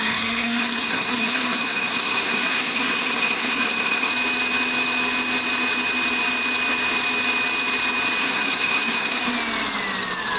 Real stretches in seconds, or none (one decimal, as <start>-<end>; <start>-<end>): 4.1-8.2; 9.2-10.4